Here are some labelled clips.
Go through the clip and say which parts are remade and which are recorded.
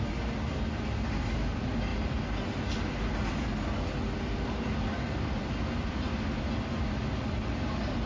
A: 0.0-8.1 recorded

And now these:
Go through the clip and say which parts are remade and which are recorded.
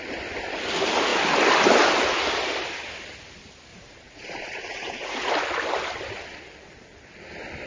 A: 0.0-3.7 recorded; 3.7-5.3 remade; 5.3-7.7 recorded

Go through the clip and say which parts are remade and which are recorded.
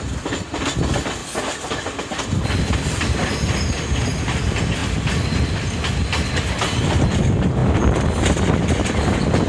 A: 0.0-1.2 recorded; 1.2-2.0 remade; 2.0-9.5 recorded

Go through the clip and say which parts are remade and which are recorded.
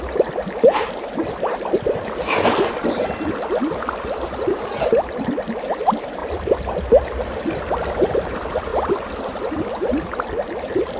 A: 0.0-11.0 recorded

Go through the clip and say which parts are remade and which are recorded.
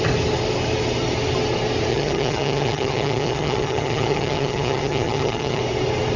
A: 0.0-1.9 recorded; 1.9-5.6 remade; 5.6-6.2 recorded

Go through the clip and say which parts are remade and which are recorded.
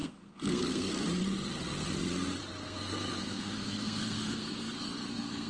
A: 0.0-0.9 remade; 0.9-2.6 recorded; 2.6-5.5 remade